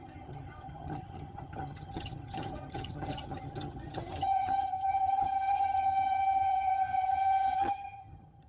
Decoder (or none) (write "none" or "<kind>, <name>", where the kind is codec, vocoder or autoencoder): vocoder, HiFi-GAN